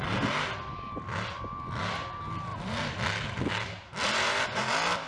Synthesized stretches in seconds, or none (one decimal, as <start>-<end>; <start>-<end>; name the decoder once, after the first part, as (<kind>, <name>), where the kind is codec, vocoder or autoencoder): none